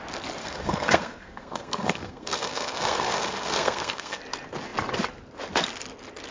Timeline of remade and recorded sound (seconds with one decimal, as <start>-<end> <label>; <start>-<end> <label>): 0.0-0.4 recorded; 0.4-4.2 remade; 4.2-6.3 recorded

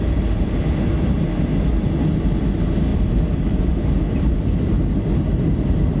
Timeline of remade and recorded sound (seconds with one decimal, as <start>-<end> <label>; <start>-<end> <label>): 0.0-2.9 recorded; 2.9-3.7 remade; 3.7-6.0 recorded

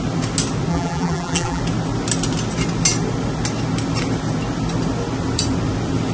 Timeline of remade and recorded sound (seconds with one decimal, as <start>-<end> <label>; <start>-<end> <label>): 0.0-0.7 recorded; 0.7-1.6 remade; 1.6-6.1 recorded